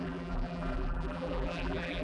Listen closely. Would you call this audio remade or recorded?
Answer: remade